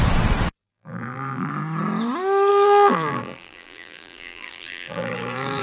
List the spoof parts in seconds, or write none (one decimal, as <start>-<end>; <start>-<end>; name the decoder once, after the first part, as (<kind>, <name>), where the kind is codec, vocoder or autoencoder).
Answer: 0.6-1.5 (vocoder, BigVGAN v2); 2.5-5.6